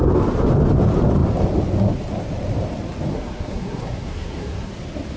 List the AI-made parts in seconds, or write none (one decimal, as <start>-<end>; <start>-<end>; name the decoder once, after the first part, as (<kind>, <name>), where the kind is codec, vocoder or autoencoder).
3.1-4.7 (codec, SNAC)